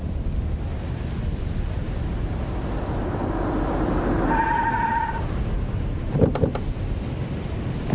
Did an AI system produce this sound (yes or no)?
no